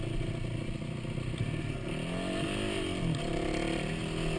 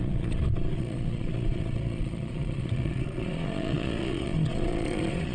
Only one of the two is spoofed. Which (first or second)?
second